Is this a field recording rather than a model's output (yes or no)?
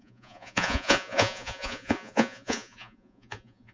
no